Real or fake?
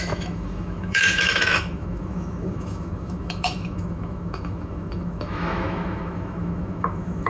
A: fake